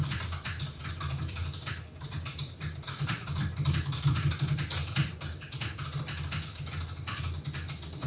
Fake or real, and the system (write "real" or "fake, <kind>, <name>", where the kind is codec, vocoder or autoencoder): real